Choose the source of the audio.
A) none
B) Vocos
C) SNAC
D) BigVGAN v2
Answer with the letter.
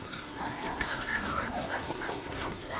C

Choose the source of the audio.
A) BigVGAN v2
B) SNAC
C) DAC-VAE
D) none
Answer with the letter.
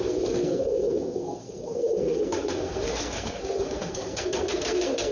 B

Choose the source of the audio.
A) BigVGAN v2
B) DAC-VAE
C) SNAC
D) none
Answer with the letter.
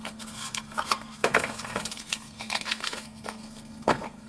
C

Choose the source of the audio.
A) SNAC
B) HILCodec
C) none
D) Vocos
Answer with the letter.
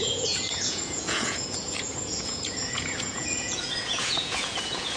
D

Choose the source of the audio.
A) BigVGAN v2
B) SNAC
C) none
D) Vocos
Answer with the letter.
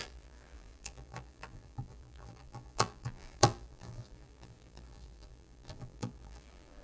A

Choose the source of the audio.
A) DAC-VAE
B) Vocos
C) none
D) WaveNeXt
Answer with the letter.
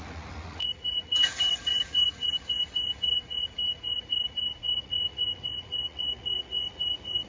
B